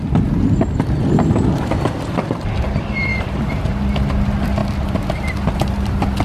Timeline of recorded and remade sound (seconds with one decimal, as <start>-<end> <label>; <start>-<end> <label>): 0.0-3.1 recorded; 3.1-3.7 remade; 3.7-6.2 recorded